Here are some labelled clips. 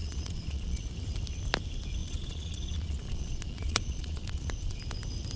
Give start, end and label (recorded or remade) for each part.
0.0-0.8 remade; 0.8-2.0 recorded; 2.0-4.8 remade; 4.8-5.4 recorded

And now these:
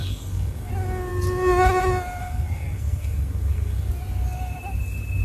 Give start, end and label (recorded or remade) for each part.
0.0-0.7 remade; 0.7-2.2 recorded; 2.2-3.9 remade; 3.9-5.2 recorded

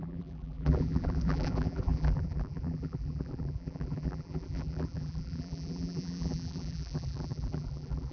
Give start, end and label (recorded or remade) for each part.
0.0-8.1 remade

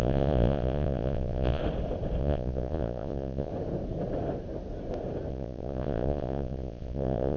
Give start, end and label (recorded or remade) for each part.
0.0-1.6 remade; 1.6-2.2 recorded; 2.2-3.5 remade; 3.5-5.3 recorded; 5.3-7.4 remade

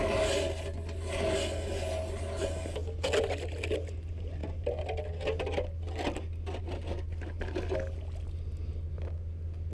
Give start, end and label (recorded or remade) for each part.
0.0-9.7 recorded

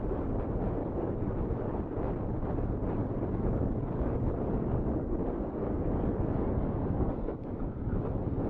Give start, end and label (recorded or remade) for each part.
0.0-0.8 recorded; 0.8-1.8 remade; 1.8-3.0 recorded; 3.0-8.1 remade; 8.1-8.5 recorded

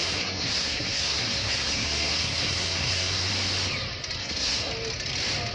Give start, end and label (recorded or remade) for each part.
0.0-3.3 remade; 3.3-4.2 recorded; 4.2-4.7 remade; 4.7-5.5 recorded

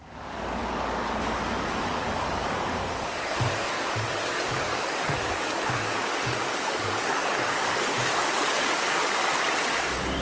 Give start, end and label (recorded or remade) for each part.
0.0-9.2 remade; 9.2-9.7 recorded; 9.7-10.2 remade